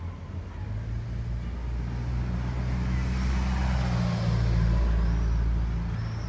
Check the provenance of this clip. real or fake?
real